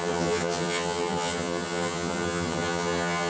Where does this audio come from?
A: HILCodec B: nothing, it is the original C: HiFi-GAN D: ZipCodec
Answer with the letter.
C